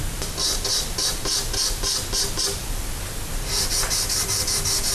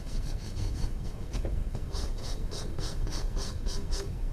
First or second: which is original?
first